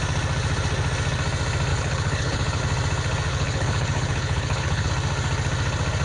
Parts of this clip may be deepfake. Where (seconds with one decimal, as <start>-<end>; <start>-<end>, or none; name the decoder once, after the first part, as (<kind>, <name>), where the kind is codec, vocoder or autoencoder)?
1.7-2.6 (codec, HILCodec); 3.3-4.9